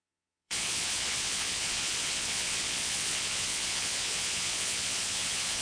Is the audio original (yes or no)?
no